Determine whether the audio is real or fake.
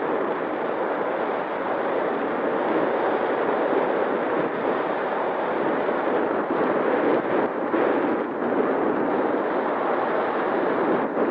real